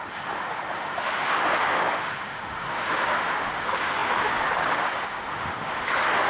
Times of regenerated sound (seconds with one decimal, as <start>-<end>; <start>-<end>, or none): 0.0-6.3